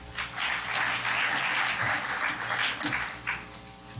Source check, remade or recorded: recorded